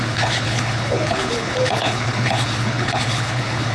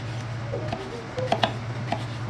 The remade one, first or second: first